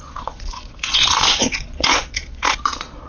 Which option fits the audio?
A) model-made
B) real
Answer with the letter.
A